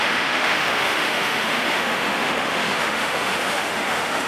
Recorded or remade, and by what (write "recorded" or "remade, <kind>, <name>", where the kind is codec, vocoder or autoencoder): remade, autoencoder, DAC-VAE